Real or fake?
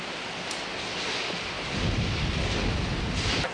real